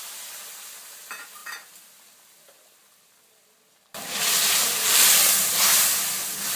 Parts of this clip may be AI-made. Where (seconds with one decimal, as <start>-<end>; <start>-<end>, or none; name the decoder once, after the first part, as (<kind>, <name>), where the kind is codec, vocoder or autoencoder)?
4.6-5.2 (vocoder, BigVGAN v2)